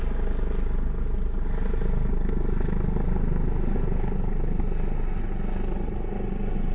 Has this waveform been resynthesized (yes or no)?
no